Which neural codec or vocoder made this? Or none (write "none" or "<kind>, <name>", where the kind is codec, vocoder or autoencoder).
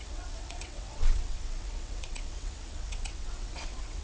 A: vocoder, WaveNeXt